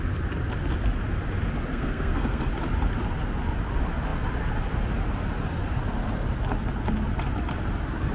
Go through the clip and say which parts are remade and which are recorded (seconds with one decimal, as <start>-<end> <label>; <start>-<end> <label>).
0.0-1.7 recorded; 1.7-2.5 remade; 2.5-8.1 recorded